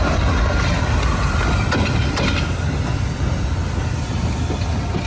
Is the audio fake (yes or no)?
no